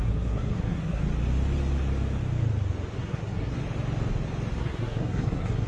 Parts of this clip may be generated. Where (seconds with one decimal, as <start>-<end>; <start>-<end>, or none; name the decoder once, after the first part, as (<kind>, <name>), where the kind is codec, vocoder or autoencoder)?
0.0-1.0 (codec, SNAC); 3.0-3.6; 4.5-5.7